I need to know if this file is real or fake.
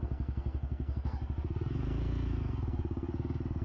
fake